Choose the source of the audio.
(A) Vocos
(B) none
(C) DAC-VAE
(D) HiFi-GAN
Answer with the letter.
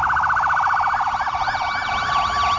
B